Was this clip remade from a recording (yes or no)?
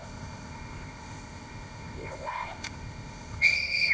yes